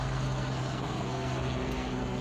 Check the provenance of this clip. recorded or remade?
remade